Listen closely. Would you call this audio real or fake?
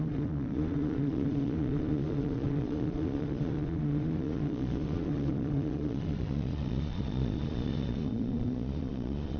fake